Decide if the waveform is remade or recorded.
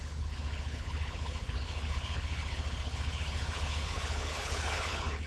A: remade